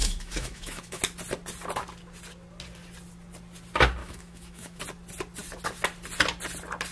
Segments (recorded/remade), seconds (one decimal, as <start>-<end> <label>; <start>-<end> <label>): 0.0-1.0 remade; 1.0-4.0 recorded; 4.0-4.8 remade; 4.8-6.9 recorded